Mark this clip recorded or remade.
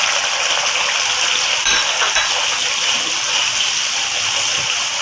recorded